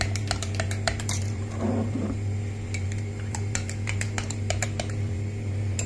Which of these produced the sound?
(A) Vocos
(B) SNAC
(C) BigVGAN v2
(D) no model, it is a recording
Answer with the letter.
C